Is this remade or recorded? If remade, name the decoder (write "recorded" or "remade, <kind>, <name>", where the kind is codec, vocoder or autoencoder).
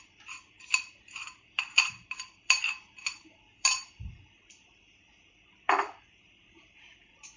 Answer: remade, vocoder, BigVGAN v2